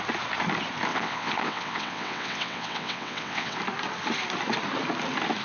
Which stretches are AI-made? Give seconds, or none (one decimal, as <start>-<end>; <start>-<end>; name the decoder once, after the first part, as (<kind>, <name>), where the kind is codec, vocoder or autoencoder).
0.9-3.6 (vocoder, WaveNeXt)